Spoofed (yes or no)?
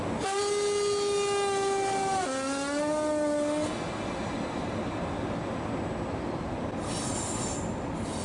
no